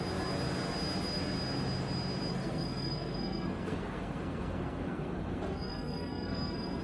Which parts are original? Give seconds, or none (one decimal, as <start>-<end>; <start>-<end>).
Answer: 0.0-2.3